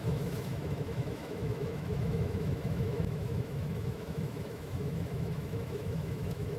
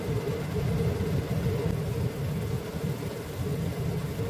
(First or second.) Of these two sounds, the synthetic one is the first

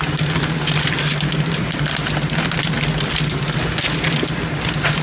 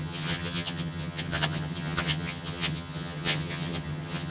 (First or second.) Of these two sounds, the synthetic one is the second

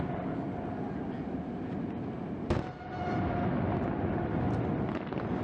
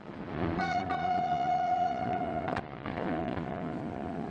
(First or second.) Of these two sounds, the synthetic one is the second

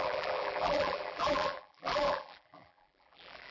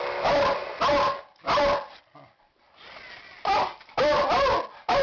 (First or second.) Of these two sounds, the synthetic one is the first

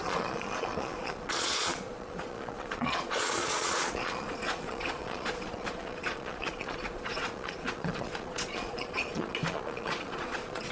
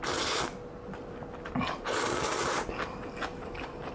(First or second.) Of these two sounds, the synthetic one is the first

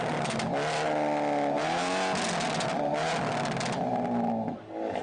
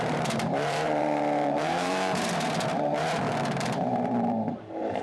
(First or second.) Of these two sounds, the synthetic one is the second